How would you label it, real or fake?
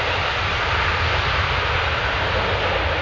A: real